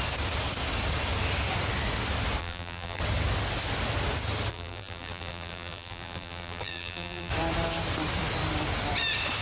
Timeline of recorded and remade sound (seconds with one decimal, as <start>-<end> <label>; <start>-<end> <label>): 0.0-2.4 recorded; 2.4-3.0 remade; 3.0-4.5 recorded; 4.5-7.3 remade; 7.3-9.4 recorded